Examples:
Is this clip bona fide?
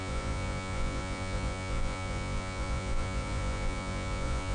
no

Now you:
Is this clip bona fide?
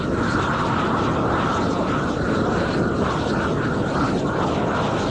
yes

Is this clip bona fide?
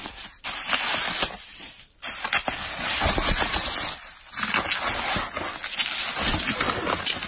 yes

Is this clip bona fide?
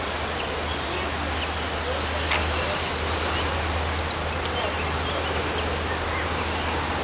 yes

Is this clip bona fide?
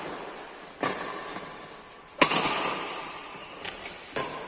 yes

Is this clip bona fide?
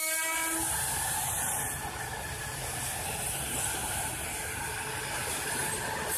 yes